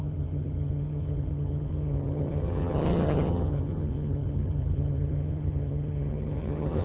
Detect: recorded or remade remade